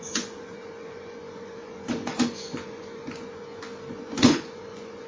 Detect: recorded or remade remade